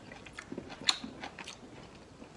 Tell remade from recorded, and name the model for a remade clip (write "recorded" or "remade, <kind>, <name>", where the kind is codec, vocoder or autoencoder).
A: recorded